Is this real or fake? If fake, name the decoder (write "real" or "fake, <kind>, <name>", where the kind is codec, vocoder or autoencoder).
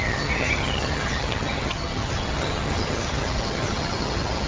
fake, vocoder, HiFi-GAN